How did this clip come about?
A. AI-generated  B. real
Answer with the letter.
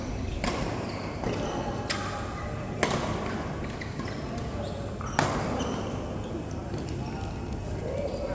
B